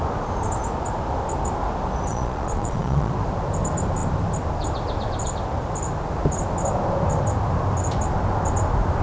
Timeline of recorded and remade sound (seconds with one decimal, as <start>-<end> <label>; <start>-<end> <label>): 0.0-2.1 recorded; 2.1-3.1 remade; 3.1-9.0 recorded